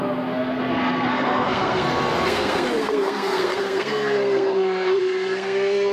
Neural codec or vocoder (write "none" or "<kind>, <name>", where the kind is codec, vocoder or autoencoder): codec, SNAC